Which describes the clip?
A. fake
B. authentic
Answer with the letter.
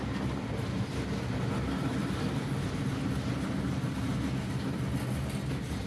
B